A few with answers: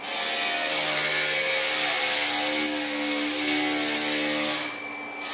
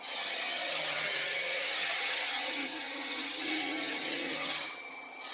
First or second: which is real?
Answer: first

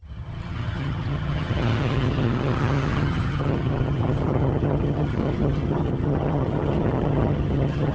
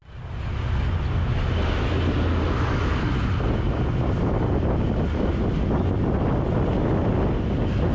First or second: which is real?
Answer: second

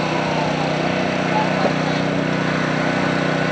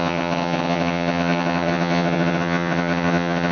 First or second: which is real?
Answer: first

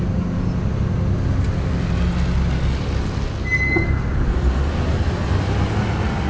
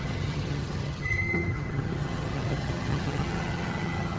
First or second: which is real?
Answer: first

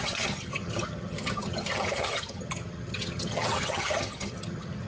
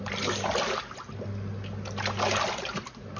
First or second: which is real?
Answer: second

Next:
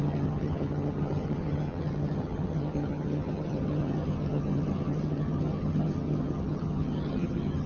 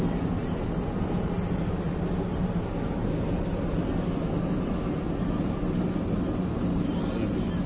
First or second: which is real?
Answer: second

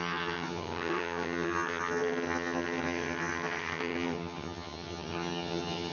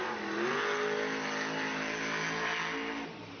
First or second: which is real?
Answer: second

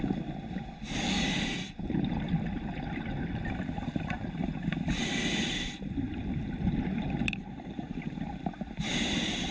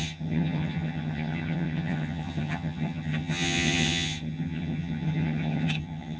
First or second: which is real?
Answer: first